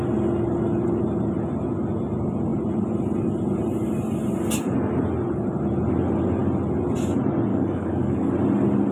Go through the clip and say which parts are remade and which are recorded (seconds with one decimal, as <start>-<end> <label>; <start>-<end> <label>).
0.0-7.5 recorded; 7.5-8.3 remade; 8.3-8.9 recorded

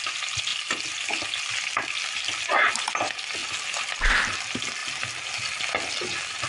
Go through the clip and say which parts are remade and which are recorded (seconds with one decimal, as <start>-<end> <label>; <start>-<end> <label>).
0.0-6.5 recorded

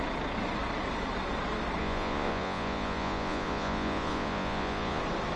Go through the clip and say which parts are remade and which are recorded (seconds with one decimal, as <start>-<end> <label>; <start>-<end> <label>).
0.0-1.8 recorded; 1.8-5.0 remade; 5.0-5.4 recorded

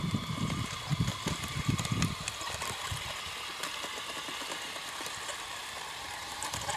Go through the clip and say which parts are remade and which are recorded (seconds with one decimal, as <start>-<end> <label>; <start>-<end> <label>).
0.0-1.1 remade; 1.1-5.2 recorded; 5.2-6.8 remade

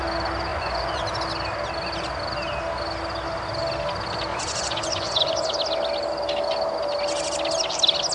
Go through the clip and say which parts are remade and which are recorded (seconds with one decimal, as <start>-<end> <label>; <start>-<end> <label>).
0.0-0.5 recorded; 0.5-1.0 remade; 1.0-4.3 recorded; 4.3-5.5 remade; 5.5-8.1 recorded

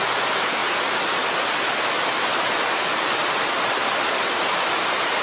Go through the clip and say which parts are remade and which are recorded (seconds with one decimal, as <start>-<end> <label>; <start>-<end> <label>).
0.0-5.2 recorded

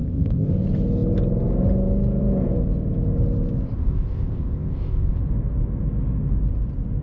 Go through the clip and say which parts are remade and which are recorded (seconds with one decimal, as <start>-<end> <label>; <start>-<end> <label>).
0.0-0.5 remade; 0.5-3.8 recorded; 3.8-5.2 remade; 5.2-7.0 recorded

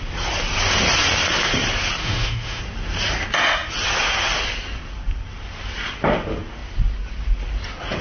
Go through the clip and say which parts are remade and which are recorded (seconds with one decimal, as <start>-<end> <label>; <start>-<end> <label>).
0.0-2.0 recorded; 2.0-2.6 remade; 2.6-8.0 recorded